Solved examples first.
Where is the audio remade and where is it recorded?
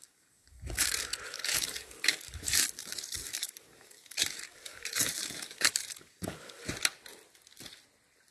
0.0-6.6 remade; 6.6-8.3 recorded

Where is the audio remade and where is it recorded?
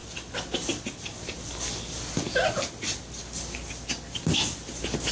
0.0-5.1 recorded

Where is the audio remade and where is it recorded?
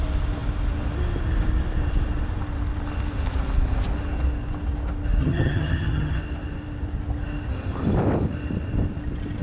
0.0-5.2 recorded; 5.2-6.2 remade; 6.2-9.4 recorded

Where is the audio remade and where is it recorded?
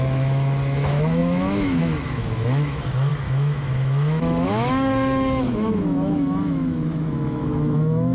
0.0-8.1 remade